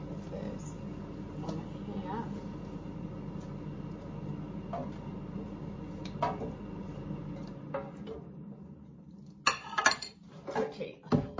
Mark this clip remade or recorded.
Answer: recorded